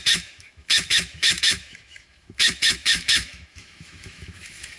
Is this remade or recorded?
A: remade